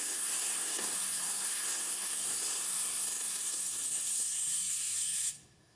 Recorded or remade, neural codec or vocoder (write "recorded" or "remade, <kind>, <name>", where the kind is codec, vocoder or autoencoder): remade, codec, SNAC